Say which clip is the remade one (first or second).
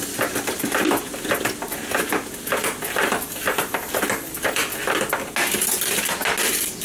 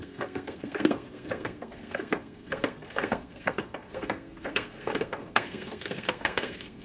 second